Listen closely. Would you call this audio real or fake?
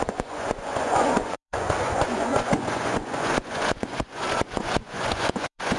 fake